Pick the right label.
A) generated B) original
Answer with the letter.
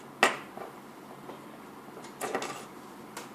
B